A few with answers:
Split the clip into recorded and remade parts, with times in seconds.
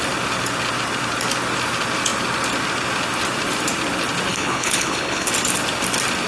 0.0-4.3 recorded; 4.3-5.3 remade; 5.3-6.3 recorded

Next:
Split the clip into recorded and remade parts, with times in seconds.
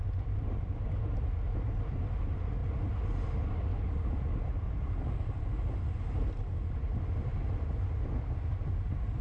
0.0-9.2 recorded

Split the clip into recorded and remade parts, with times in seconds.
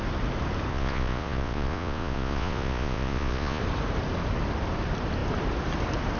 0.0-0.7 recorded; 0.7-3.6 remade; 3.6-6.2 recorded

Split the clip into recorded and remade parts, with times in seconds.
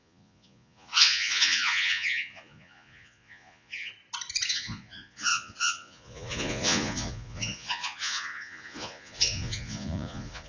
0.0-3.9 remade; 3.9-4.5 recorded; 4.5-10.5 remade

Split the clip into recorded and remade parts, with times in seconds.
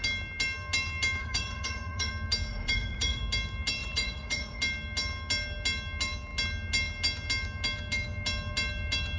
0.0-1.2 recorded; 1.2-2.1 remade; 2.1-2.5 recorded; 2.5-3.2 remade; 3.2-3.8 recorded; 3.8-4.6 remade; 4.6-9.2 recorded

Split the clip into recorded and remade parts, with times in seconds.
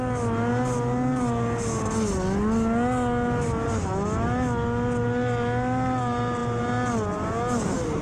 0.0-8.0 recorded